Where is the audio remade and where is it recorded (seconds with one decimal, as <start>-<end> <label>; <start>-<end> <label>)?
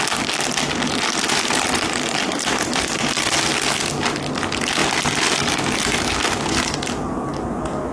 0.0-7.9 recorded